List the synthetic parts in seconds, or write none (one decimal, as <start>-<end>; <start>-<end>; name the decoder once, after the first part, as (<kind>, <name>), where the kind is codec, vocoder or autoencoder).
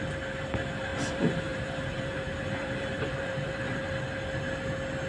0.9-4.0 (vocoder, BigVGAN v2)